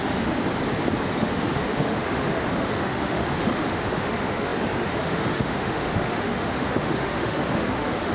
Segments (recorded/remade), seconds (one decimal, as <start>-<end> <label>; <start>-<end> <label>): 0.0-0.4 remade; 0.4-1.1 recorded; 1.1-8.1 remade